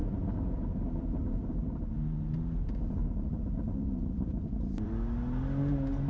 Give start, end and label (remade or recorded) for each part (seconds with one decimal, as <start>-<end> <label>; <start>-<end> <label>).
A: 0.0-0.6 remade; 0.6-1.2 recorded; 1.2-4.9 remade; 4.9-6.1 recorded